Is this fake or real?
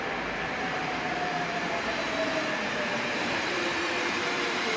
fake